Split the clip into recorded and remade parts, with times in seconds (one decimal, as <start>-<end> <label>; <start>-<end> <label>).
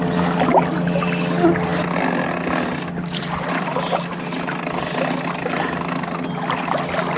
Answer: 0.0-7.2 recorded